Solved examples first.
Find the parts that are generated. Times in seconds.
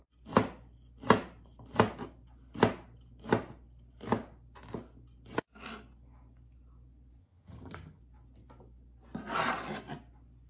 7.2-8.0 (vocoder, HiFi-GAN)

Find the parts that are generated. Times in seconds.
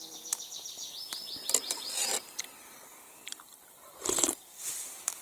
2.9-4.4 (vocoder, BigVGAN v2)